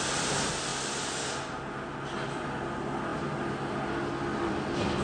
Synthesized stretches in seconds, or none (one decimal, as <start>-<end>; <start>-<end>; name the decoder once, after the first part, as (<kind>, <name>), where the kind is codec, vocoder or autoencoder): none